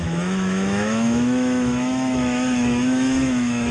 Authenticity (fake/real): fake